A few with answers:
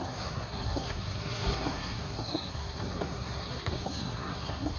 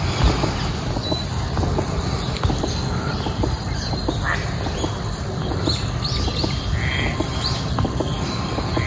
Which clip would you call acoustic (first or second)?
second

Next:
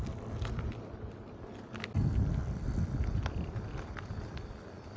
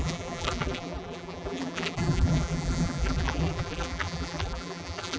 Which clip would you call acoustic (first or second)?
first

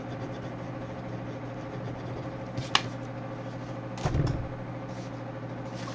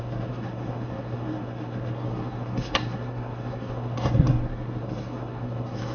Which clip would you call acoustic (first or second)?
first